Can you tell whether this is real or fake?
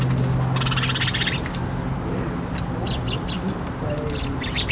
real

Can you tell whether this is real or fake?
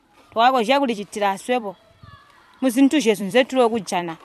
fake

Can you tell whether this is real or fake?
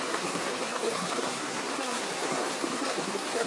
fake